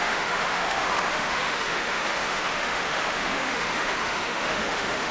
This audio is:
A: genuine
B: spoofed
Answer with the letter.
B